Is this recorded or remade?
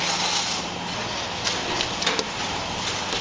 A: recorded